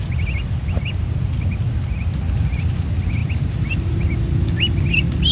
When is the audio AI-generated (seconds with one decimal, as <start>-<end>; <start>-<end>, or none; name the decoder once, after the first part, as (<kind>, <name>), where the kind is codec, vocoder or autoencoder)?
none